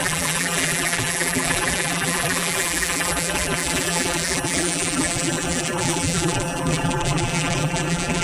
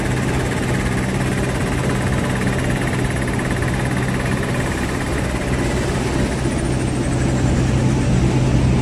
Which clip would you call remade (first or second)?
first